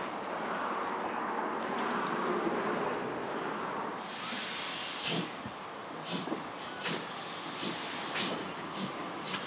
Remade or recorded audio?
recorded